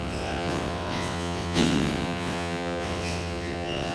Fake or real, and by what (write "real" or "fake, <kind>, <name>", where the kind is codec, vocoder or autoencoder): fake, vocoder, WaveNeXt